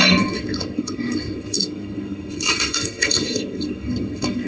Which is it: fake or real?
fake